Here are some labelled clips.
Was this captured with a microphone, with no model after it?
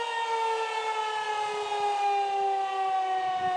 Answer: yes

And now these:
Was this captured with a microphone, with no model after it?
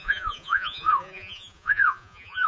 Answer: no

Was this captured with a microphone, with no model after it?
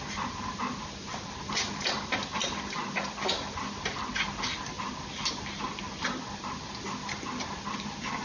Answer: yes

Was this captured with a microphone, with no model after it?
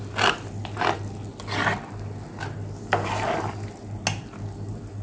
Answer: yes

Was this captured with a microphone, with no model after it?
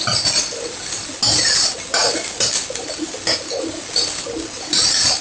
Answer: yes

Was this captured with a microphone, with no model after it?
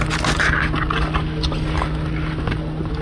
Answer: yes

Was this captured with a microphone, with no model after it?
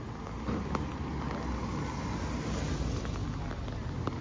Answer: yes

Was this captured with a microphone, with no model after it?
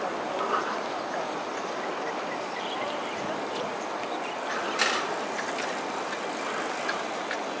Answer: yes